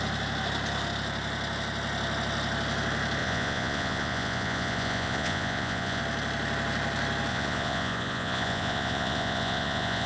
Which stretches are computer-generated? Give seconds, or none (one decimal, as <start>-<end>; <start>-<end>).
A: 3.2-6.0; 7.3-10.1